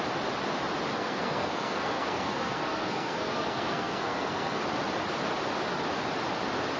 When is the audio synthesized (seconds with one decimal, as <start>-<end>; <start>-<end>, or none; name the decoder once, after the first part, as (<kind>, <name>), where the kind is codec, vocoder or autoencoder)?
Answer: 0.9-4.6 (codec, SNAC)